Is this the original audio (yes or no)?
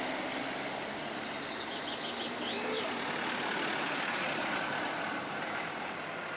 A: no